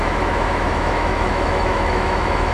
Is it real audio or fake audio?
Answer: fake